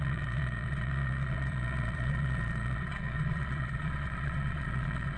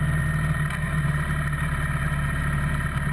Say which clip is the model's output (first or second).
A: first